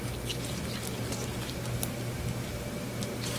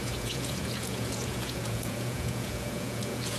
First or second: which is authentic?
first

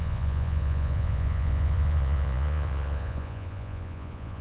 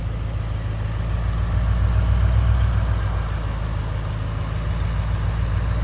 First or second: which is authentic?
second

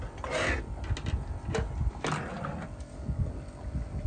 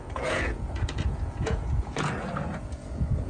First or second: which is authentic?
first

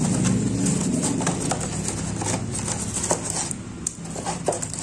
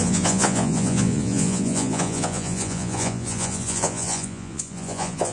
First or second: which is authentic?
first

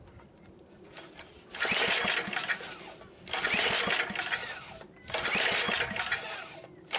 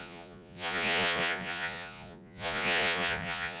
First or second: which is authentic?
first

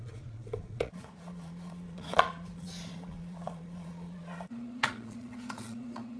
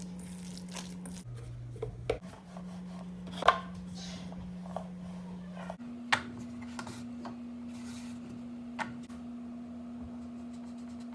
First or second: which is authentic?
second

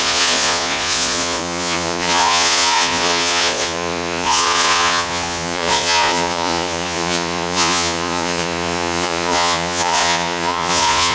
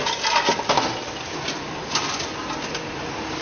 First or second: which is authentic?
second